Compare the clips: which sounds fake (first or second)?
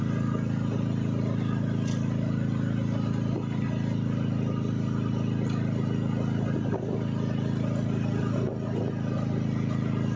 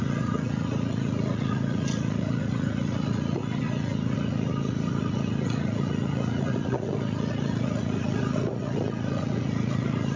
second